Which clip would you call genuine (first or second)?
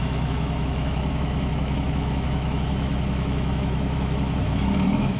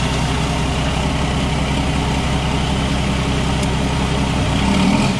second